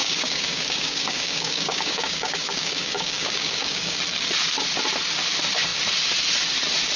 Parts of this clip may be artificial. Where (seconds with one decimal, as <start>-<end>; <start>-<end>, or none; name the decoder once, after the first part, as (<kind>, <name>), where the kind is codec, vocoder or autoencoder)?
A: 0.0-4.0 (codec, DAC)